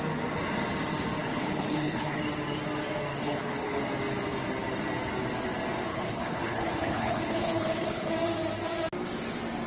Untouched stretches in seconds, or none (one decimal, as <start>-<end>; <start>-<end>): 0.0-1.2; 2.2-3.1; 3.8-5.9; 8.1-9.7

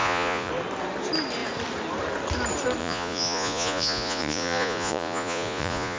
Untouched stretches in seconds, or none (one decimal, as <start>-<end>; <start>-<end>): 0.5-2.8